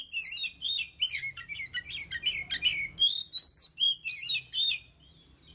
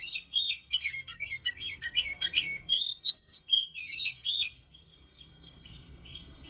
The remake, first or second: second